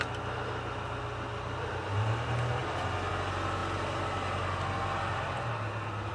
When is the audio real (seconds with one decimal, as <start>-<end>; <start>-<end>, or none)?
0.0-1.3; 1.8-6.1